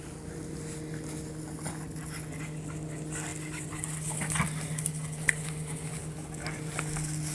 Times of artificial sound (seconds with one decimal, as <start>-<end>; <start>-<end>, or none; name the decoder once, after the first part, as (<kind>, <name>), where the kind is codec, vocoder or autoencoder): none